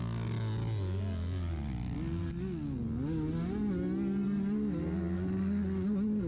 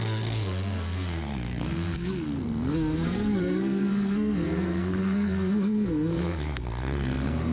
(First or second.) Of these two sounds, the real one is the first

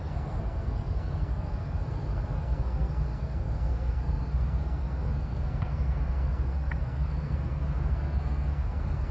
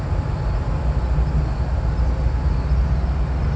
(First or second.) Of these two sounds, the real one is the second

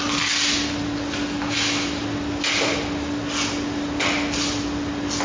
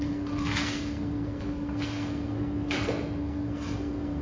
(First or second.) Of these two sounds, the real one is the first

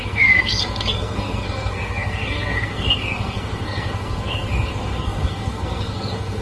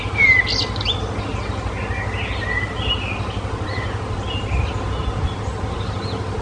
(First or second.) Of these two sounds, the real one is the second